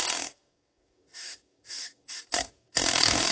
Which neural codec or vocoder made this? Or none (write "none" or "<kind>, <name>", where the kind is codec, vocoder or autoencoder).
codec, DAC